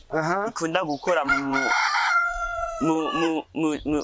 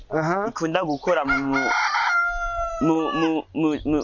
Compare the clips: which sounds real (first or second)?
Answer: second